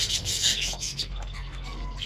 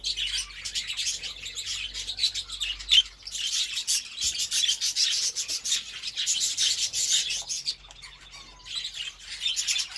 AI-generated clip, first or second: first